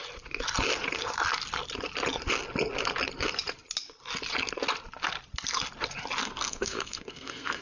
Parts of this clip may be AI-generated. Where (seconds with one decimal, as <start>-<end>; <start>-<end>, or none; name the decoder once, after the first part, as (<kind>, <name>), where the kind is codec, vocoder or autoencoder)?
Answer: 6.2-7.6 (codec, SNAC)